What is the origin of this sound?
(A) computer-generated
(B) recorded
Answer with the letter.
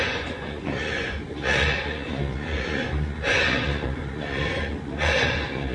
A